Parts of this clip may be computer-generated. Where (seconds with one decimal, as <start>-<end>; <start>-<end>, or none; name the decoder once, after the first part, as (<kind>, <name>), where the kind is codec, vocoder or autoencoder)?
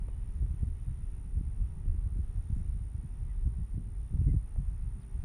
0.0-1.9 (vocoder, BigVGAN v2)